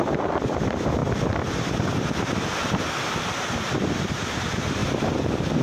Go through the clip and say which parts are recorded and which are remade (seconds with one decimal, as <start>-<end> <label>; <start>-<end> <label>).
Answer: 0.0-1.0 remade; 1.0-2.7 recorded; 2.7-5.6 remade

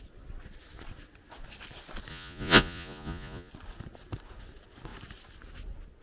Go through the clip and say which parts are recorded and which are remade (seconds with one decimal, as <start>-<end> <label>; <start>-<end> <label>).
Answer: 0.0-2.1 recorded; 2.1-3.5 remade; 3.5-6.0 recorded

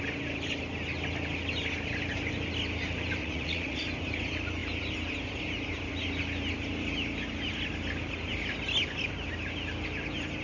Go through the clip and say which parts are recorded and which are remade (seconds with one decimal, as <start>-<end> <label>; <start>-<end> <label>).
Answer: 0.0-3.2 recorded; 3.2-3.8 remade; 3.8-10.4 recorded

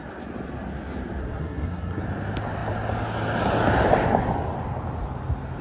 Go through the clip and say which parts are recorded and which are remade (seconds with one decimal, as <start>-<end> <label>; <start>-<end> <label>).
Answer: 0.0-1.2 recorded; 1.2-2.0 remade; 2.0-5.6 recorded

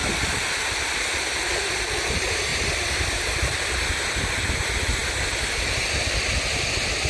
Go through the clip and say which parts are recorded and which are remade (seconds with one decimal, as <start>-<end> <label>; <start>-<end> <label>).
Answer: 0.0-7.1 recorded

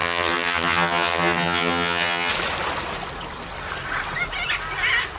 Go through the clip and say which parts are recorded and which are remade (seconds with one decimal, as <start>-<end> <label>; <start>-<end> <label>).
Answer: 0.0-2.3 remade; 2.3-5.2 recorded

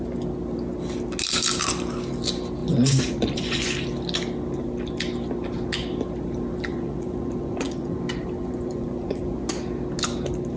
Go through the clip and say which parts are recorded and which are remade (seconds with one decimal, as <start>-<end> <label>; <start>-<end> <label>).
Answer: 0.0-2.6 recorded; 2.6-3.7 remade; 3.7-6.7 recorded; 6.7-8.0 remade; 8.0-8.4 recorded; 8.4-9.5 remade; 9.5-10.6 recorded